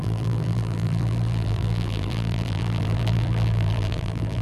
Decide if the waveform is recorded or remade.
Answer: remade